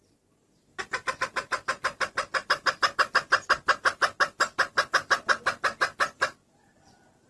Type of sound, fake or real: real